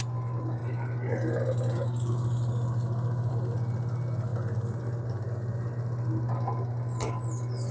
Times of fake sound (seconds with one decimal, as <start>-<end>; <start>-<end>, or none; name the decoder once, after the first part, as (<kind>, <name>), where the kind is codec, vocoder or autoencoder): none